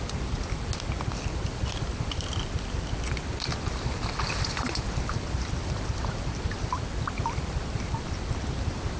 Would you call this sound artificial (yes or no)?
yes